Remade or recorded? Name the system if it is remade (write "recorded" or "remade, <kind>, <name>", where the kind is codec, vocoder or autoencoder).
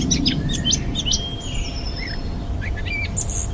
recorded